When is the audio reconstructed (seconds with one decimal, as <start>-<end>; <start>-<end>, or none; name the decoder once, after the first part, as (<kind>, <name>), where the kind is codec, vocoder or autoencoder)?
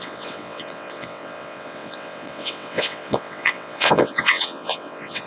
0.0-5.3 (vocoder, WaveNeXt)